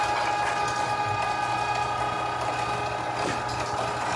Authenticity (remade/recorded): recorded